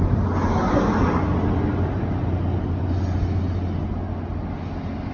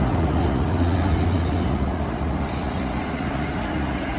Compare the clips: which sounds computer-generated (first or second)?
second